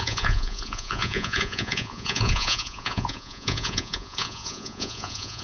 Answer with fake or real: fake